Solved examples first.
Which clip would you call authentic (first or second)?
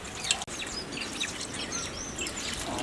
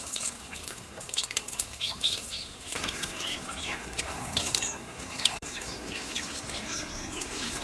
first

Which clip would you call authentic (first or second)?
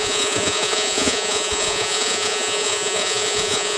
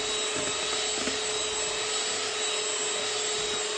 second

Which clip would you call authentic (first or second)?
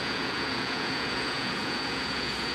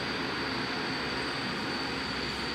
second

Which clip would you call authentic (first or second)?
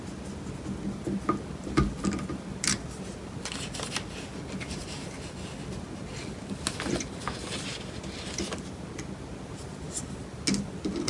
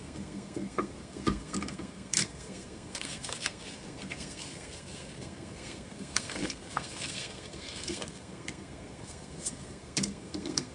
first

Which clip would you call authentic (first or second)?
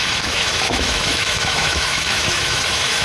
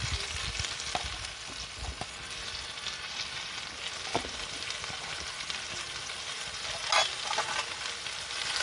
second